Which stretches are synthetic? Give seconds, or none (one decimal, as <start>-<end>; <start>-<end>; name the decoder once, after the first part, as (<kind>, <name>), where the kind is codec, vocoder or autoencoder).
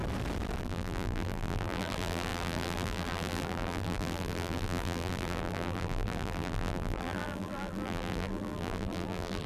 0.6-9.5 (vocoder, BigVGAN v2)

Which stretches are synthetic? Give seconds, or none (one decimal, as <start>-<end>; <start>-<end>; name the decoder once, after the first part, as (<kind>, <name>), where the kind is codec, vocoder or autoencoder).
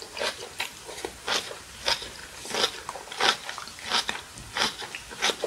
0.0-0.7 (vocoder, BigVGAN v2); 1.3-2.2; 4.5-5.5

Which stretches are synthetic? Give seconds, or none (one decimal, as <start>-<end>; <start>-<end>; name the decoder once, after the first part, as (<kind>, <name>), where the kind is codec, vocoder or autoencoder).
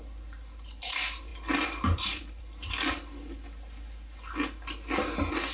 1.3-2.4 (vocoder, BigVGAN v2)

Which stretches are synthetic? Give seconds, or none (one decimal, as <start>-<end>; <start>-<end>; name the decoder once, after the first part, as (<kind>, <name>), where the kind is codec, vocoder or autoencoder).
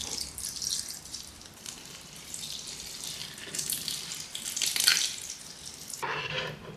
1.0-6.8 (vocoder, BigVGAN v2)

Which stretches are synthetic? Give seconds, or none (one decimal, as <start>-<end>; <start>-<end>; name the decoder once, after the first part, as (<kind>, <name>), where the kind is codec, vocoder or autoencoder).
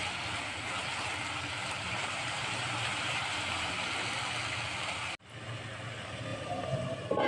0.0-0.9 (vocoder, BigVGAN v2); 1.6-3.7; 6.3-7.3